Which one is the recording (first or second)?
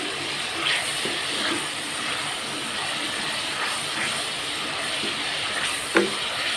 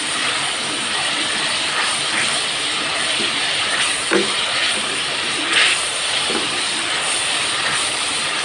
first